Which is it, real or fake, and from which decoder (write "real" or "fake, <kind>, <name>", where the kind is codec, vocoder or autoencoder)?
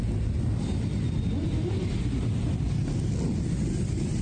real